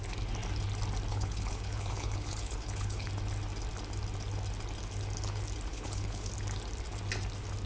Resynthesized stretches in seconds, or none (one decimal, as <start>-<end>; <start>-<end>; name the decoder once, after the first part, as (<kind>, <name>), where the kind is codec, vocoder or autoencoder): 1.1-3.1 (codec, HILCodec); 5.7-6.3